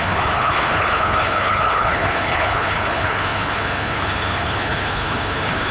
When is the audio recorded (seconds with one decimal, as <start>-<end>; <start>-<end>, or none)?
none